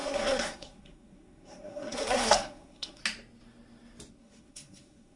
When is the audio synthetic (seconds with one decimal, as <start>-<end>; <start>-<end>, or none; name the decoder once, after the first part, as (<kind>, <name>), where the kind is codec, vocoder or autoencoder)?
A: 0.0-3.0 (codec, SNAC); 4.1-5.2